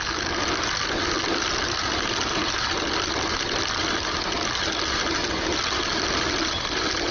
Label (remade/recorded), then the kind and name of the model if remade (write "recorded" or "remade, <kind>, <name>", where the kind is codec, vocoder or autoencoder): recorded